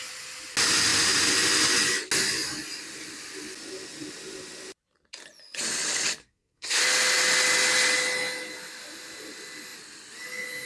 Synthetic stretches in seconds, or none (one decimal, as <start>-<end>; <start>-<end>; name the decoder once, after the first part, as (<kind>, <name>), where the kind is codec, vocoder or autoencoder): 6.2-6.8 (codec, SNAC)